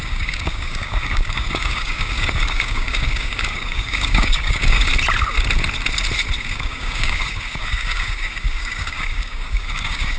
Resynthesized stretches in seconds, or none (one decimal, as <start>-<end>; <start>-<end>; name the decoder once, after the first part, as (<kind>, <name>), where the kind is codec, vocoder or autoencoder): 0.0-4.9 (codec, DAC); 6.4-10.2